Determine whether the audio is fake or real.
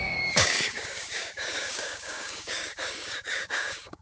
fake